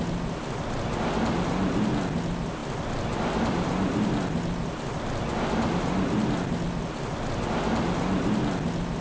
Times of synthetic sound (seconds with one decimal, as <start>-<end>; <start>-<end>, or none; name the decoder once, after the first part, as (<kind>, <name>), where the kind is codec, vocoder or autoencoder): 2.6-7.4 (vocoder, BigVGAN v2)

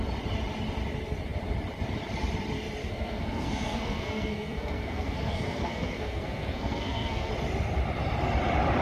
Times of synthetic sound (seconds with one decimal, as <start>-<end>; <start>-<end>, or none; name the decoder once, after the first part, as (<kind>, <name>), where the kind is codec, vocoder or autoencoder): 2.8-7.3 (codec, SNAC)

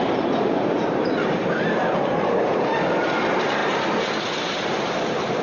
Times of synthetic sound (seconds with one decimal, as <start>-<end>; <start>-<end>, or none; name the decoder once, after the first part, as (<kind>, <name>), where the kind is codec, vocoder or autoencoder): 0.0-1.2 (vocoder, BigVGAN v2); 1.7-5.4

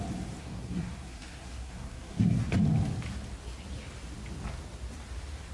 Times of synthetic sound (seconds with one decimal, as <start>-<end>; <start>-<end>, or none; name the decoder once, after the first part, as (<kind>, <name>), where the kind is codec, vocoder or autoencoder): 0.4-2.5 (codec, SNAC)

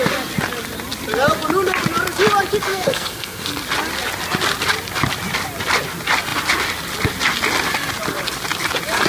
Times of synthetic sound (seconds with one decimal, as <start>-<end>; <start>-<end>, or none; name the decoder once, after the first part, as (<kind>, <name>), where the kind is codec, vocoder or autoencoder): 2.7-3.6 (codec, SNAC)

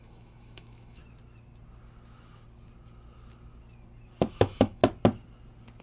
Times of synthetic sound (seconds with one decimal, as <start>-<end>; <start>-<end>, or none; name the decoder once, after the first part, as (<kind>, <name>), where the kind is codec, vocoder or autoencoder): 0.0-1.0 (autoencoder, DAC-VAE); 4.3-4.8

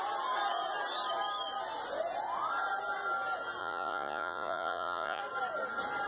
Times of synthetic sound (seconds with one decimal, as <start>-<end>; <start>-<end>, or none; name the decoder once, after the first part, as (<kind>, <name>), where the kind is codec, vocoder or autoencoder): 3.6-5.2 (vocoder, Vocos)